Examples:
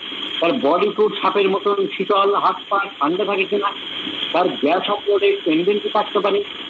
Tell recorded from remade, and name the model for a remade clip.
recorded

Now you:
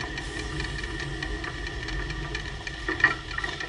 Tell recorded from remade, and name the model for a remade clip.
recorded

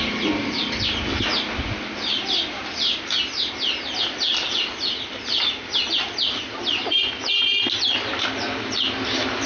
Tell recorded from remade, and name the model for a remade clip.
recorded